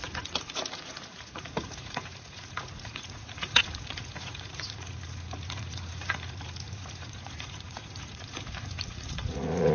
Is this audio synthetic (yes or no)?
yes